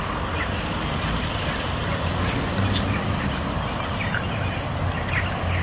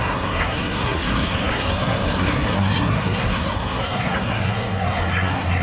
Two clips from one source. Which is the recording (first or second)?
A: first